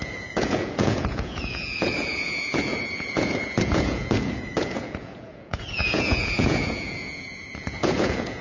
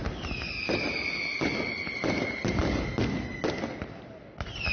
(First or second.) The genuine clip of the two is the second